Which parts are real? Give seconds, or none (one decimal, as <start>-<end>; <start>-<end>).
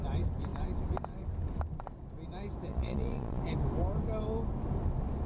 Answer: 0.0-2.7; 3.4-5.3